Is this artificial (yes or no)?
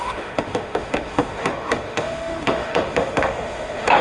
yes